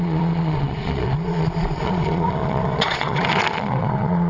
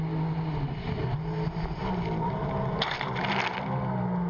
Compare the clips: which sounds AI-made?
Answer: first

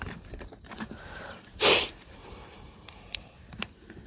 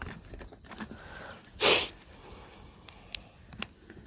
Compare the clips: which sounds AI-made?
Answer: first